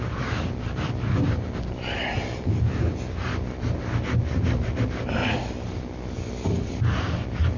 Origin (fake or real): real